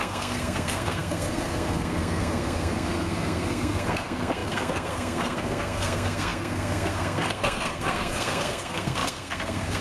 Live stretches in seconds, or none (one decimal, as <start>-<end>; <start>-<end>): none